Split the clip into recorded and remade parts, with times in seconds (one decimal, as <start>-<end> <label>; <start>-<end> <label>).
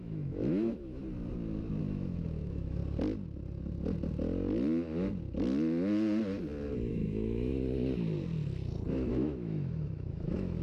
0.0-1.0 remade; 1.0-1.8 recorded; 1.8-2.8 remade; 2.8-6.9 recorded; 6.9-7.5 remade; 7.5-9.1 recorded; 9.1-10.6 remade